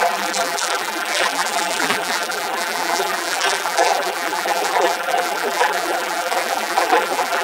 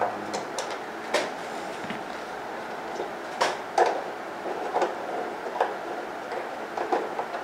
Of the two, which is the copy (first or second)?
first